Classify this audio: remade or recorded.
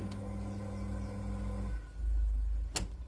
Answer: recorded